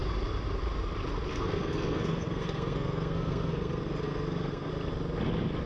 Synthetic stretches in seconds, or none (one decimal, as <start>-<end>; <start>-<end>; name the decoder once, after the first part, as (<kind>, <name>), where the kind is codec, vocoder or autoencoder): 1.3-4.7 (codec, SNAC)